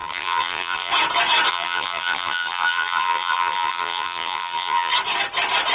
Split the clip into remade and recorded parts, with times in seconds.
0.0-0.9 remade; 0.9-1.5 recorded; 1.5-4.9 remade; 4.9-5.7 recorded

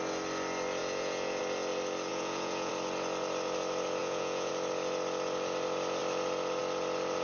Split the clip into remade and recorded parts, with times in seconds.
0.0-0.8 recorded; 0.8-1.4 remade; 1.4-2.1 recorded; 2.1-2.7 remade; 2.7-4.0 recorded; 4.0-4.5 remade; 4.5-7.2 recorded

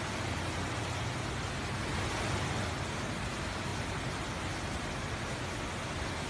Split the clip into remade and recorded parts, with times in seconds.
0.0-6.3 recorded

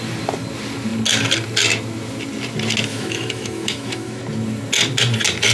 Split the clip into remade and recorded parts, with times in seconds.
0.0-2.9 recorded; 2.9-4.2 remade; 4.2-5.5 recorded

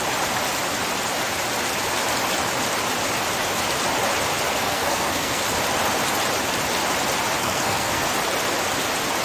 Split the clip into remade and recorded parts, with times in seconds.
0.0-4.5 recorded; 4.5-5.4 remade; 5.4-7.4 recorded; 7.4-8.1 remade; 8.1-9.2 recorded

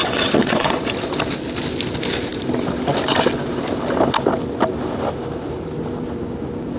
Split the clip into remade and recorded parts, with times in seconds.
0.0-0.8 remade; 0.8-6.8 recorded

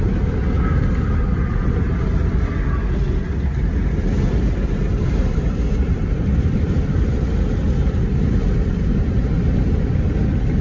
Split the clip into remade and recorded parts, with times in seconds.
0.0-4.9 recorded; 4.9-7.6 remade; 7.6-10.6 recorded

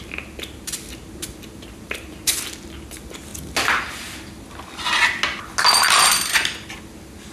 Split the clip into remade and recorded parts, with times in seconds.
0.0-7.3 recorded